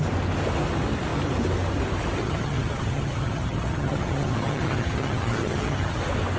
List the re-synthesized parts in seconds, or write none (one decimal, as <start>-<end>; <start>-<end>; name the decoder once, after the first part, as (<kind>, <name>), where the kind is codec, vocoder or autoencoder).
2.2-6.0 (vocoder, HiFi-GAN)